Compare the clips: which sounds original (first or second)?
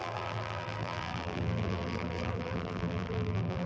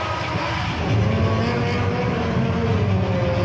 second